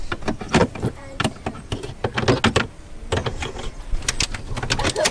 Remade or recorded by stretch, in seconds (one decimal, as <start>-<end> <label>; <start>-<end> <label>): 0.0-0.6 recorded; 0.6-1.2 remade; 1.2-3.2 recorded; 3.2-3.8 remade; 3.8-5.1 recorded